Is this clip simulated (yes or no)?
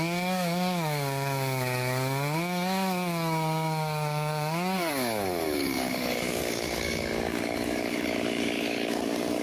yes